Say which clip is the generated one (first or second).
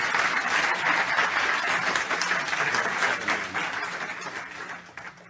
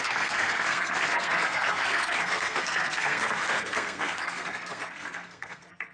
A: second